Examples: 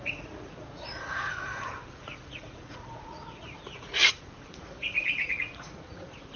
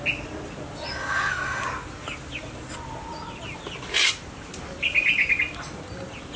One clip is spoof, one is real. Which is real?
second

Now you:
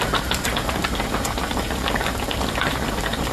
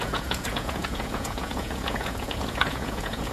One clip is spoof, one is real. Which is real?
first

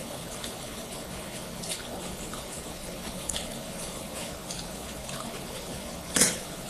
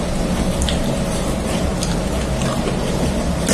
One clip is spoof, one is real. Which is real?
second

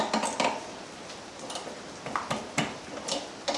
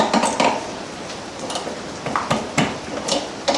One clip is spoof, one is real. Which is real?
first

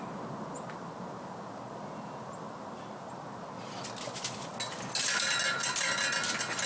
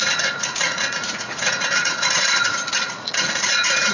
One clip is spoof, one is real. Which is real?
first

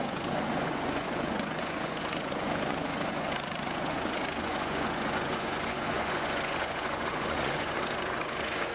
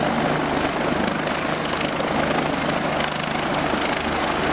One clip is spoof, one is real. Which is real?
second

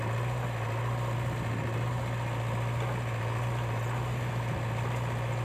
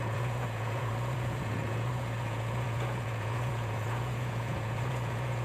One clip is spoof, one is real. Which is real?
first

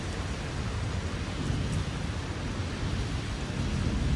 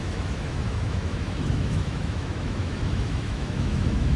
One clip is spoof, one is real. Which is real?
first